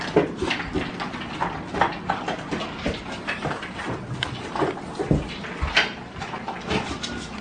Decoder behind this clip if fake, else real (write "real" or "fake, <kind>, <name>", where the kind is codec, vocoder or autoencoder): real